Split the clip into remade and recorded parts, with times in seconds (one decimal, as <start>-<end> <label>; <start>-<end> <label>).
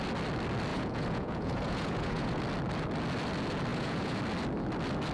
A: 0.0-0.7 recorded; 0.7-2.4 remade; 2.4-3.7 recorded; 3.7-4.2 remade; 4.2-5.1 recorded